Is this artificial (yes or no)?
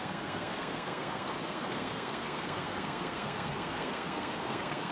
yes